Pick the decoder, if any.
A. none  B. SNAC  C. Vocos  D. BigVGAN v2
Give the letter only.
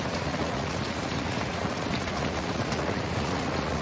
C